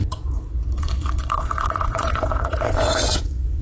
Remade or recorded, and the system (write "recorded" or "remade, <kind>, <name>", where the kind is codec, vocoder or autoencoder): remade, vocoder, Vocos